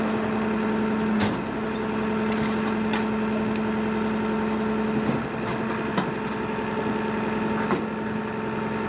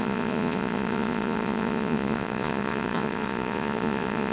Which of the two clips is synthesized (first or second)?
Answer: second